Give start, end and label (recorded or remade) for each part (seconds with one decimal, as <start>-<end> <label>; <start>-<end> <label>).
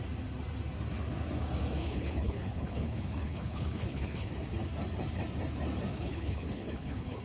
0.0-1.8 recorded; 1.8-4.3 remade; 4.3-5.9 recorded; 5.9-7.2 remade